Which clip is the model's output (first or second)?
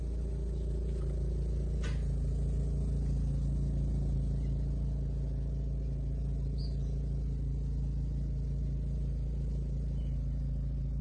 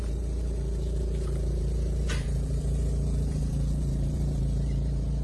second